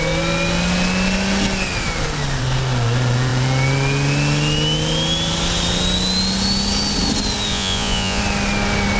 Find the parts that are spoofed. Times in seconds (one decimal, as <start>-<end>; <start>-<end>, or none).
7.5-8.2